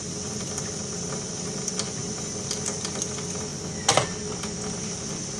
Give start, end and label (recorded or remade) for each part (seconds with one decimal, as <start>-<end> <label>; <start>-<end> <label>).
0.0-5.4 recorded